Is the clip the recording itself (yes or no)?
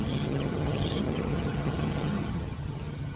no